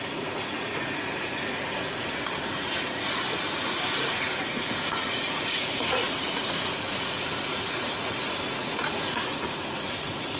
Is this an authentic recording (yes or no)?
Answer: no